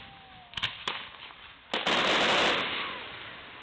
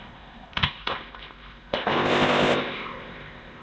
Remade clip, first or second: second